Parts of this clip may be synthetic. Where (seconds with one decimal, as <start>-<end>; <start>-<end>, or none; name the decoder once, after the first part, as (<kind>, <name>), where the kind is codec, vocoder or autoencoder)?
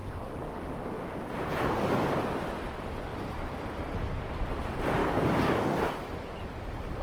0.0-0.7 (codec, DAC); 5.0-5.8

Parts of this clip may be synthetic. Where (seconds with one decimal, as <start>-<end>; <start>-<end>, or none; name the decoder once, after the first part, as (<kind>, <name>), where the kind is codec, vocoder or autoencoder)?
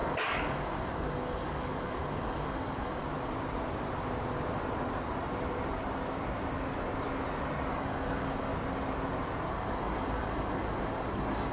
0.0-3.0 (codec, DAC); 7.7-8.5; 9.5-11.5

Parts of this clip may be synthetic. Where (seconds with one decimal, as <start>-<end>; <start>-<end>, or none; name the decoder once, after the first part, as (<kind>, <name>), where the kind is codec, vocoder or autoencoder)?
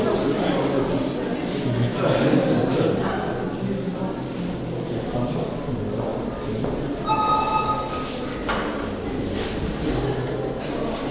none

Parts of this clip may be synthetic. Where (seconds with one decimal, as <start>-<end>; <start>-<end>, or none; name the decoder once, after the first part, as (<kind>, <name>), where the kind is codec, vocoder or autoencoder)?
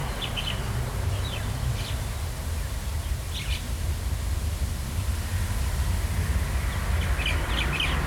none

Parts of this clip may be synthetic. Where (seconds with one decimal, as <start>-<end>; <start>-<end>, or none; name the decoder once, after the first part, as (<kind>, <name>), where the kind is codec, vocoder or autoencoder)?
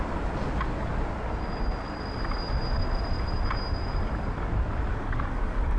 4.9-5.8 (codec, DAC)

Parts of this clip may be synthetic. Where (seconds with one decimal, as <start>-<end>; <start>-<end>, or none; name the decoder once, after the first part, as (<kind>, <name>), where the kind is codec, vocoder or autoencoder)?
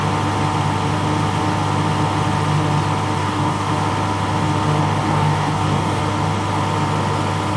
3.2-3.7 (codec, DAC); 5.0-6.0